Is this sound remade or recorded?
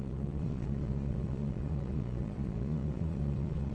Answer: remade